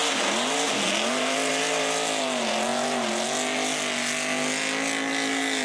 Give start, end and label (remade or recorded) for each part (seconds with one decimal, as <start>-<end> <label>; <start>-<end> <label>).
0.0-5.6 recorded